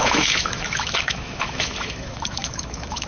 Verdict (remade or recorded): remade